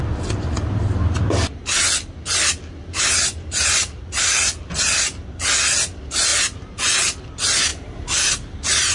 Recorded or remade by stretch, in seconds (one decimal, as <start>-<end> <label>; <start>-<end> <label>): 0.0-7.7 recorded; 7.7-8.3 remade; 8.3-8.9 recorded